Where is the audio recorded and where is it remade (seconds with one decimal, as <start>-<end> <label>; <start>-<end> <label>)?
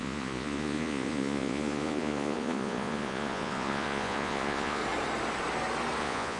0.0-4.8 remade; 4.8-6.0 recorded; 6.0-6.4 remade